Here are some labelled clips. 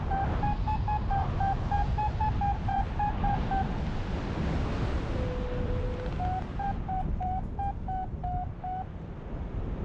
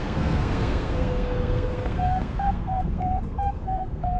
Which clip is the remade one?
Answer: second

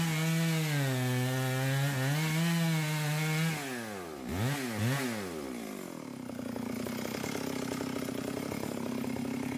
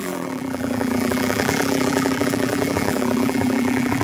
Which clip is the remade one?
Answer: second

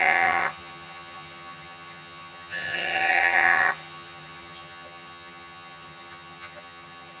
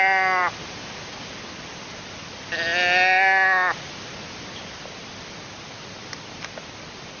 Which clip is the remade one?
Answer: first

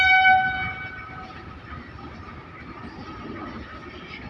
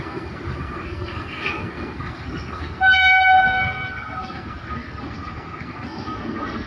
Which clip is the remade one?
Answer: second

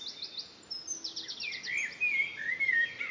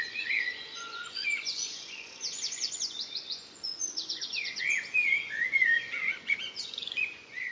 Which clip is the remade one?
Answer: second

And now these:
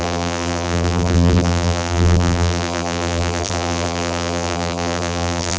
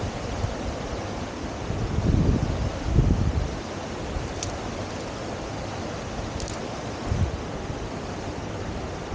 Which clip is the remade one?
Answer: first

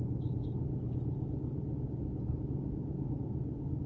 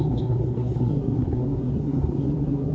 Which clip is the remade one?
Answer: second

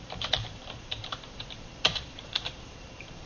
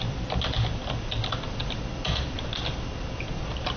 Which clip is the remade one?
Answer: first